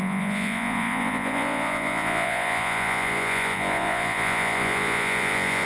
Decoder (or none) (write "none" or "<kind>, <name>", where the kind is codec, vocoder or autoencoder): vocoder, Vocos